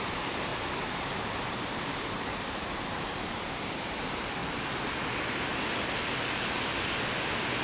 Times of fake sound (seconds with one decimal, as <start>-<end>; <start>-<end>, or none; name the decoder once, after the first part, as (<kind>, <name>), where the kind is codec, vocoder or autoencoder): 0.0-0.5 (vocoder, BigVGAN v2); 1.4-4.4